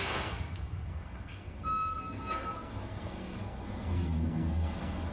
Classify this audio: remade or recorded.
remade